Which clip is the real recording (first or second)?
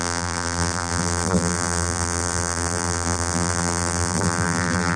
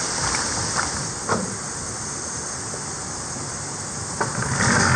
second